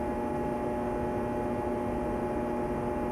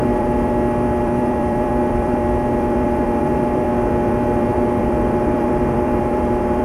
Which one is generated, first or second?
second